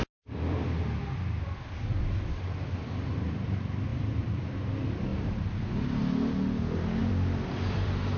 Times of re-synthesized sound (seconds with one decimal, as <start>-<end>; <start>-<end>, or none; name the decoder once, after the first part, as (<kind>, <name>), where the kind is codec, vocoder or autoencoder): 3.9-4.5 (vocoder, BigVGAN v2); 7.0-8.2